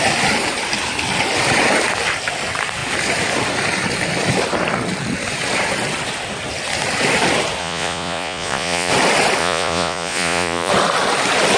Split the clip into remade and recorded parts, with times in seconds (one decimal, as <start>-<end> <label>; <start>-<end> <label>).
0.0-7.6 recorded; 7.6-8.9 remade; 8.9-9.4 recorded; 9.4-10.7 remade; 10.7-11.6 recorded